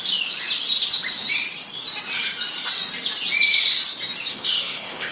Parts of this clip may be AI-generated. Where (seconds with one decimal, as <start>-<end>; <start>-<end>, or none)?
4.3-5.1